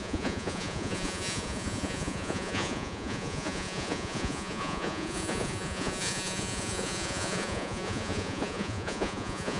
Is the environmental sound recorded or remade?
remade